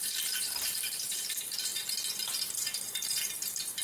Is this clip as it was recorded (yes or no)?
no